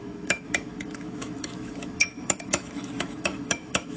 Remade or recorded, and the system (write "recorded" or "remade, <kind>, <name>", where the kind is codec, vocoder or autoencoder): remade, autoencoder, DAC-VAE